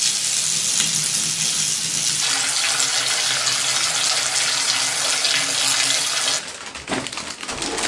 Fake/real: real